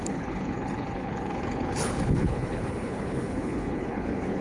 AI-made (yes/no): yes